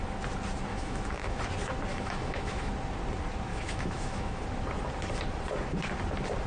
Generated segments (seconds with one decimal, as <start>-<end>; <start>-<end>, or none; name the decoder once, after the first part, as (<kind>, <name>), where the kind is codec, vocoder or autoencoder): 0.7-1.4 (autoencoder, DAC-VAE); 1.9-2.7; 3.5-4.4